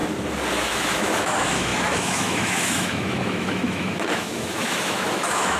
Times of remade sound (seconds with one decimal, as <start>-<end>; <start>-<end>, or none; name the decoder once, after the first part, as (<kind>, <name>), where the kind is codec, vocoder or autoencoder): 0.6-5.6 (autoencoder, DAC-VAE)